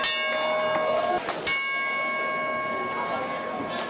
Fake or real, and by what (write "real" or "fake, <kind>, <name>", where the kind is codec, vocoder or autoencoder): real